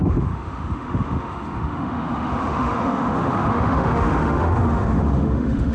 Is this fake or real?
fake